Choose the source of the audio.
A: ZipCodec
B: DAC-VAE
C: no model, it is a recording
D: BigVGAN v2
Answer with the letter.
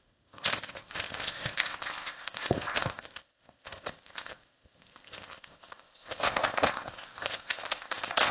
A